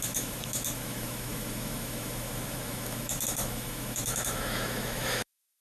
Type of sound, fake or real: fake